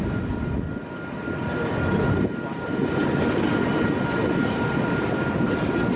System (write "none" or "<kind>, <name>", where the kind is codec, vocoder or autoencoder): none